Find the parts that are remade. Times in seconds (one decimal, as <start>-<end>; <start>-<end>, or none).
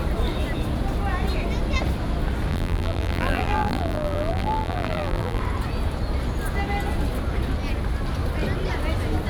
2.5-5.4